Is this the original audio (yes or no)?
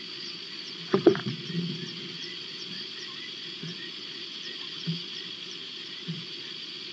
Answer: no